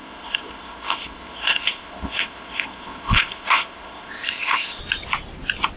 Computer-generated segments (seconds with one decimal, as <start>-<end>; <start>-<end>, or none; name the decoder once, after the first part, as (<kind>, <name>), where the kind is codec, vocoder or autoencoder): 0.0-4.8 (codec, ZipCodec)